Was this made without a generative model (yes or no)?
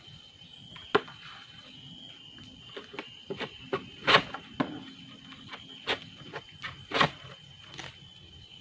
yes